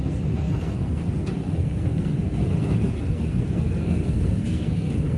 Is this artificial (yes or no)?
yes